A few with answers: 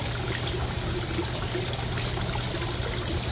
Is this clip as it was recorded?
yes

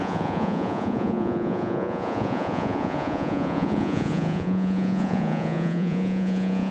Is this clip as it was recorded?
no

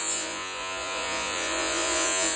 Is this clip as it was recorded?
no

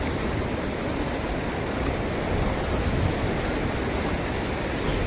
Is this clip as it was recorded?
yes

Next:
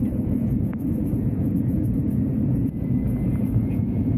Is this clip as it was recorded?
no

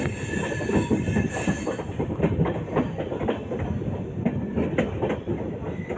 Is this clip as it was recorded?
yes